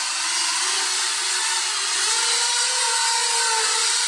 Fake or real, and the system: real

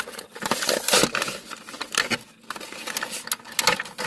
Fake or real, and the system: real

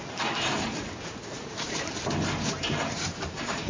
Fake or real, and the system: fake, vocoder, BigVGAN v2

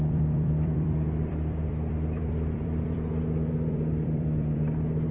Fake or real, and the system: fake, vocoder, BigVGAN v2